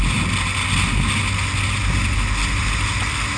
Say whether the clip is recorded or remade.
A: recorded